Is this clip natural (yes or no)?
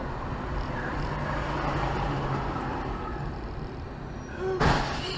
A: yes